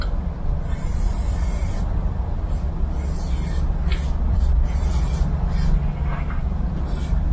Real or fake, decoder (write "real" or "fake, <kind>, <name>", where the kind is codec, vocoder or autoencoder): real